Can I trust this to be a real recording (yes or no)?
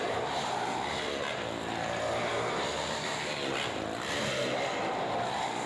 yes